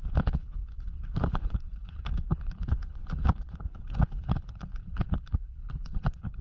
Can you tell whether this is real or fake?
fake